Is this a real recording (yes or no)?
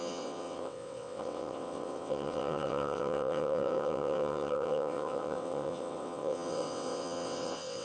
no